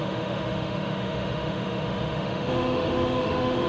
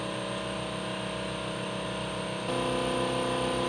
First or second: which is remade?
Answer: first